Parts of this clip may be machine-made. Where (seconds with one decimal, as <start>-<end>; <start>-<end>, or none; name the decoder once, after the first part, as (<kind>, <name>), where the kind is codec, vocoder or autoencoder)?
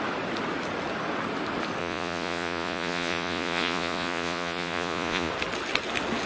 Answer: 1.8-5.3 (vocoder, Vocos)